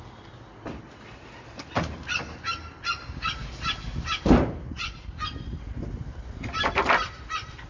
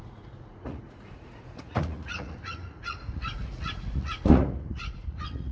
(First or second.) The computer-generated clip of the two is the second